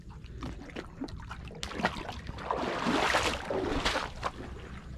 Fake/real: real